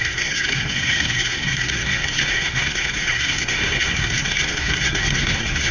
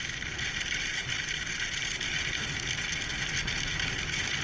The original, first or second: second